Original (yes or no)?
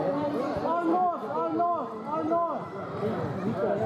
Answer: yes